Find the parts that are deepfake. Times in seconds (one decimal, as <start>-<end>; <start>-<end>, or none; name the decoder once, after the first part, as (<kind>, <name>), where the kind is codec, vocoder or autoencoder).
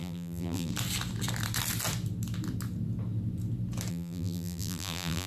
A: 0.0-0.7 (vocoder, BigVGAN v2); 3.9-5.3